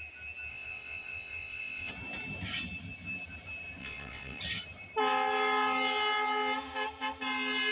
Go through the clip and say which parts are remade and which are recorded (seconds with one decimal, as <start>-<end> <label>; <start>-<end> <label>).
0.0-0.5 recorded; 0.5-1.9 remade; 1.9-3.8 recorded; 3.8-4.4 remade; 4.4-7.7 recorded